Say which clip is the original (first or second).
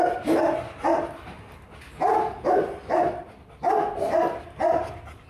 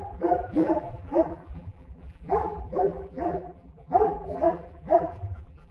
first